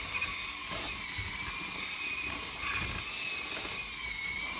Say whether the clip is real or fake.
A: real